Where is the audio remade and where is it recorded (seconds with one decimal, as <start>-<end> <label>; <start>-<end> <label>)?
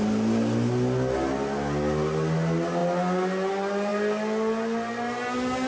0.0-5.7 recorded